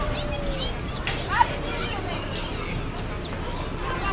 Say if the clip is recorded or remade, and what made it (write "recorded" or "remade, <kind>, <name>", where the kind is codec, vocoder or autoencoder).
recorded